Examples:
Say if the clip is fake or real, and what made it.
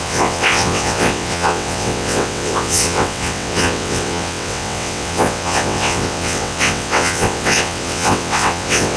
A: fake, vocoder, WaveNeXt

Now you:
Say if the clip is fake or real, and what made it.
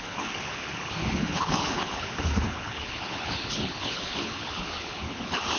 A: fake, codec, HILCodec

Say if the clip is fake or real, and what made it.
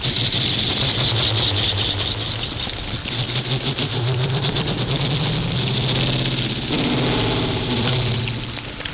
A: real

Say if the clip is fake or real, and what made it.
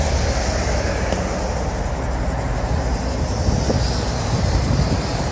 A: real